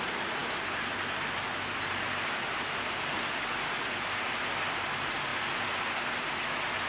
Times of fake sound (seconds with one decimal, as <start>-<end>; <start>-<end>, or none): none